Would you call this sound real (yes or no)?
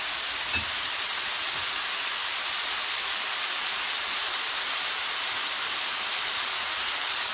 no